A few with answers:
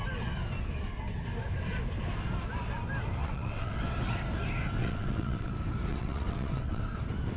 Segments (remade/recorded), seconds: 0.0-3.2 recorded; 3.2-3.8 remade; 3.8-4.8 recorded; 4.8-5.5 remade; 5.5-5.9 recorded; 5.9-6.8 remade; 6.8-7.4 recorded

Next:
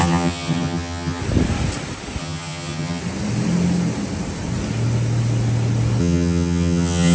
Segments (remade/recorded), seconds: 0.0-1.2 remade; 1.2-2.2 recorded; 2.2-3.0 remade; 3.0-6.0 recorded; 6.0-7.1 remade